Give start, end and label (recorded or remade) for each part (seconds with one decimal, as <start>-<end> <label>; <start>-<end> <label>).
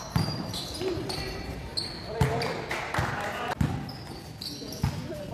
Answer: 0.0-1.7 remade; 1.7-5.3 recorded